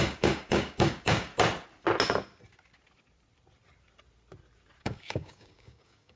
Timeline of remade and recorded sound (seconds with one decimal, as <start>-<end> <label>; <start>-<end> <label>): 0.0-1.3 remade; 1.3-4.8 recorded; 4.8-6.2 remade